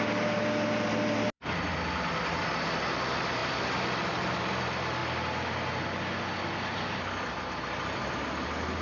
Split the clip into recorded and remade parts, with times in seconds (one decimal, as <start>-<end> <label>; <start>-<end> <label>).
0.0-3.4 recorded; 3.4-4.4 remade; 4.4-8.8 recorded